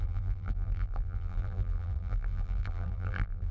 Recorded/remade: remade